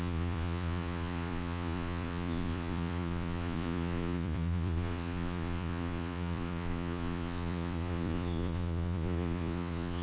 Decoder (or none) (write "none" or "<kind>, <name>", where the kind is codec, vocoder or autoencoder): vocoder, Vocos